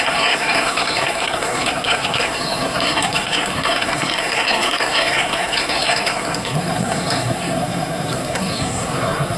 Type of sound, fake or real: fake